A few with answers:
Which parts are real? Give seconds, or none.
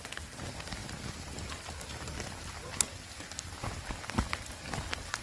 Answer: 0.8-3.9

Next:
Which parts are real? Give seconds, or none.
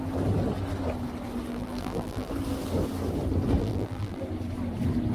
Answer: 0.0-1.5; 2.3-3.6; 4.2-5.1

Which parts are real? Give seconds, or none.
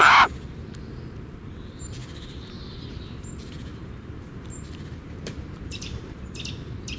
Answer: 0.0-2.0; 3.2-3.7; 6.3-7.0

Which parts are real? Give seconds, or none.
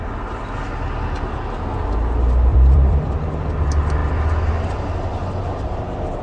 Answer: 0.0-2.5; 3.5-6.2